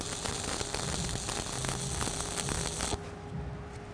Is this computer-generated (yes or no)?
no